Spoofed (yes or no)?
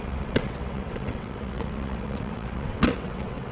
yes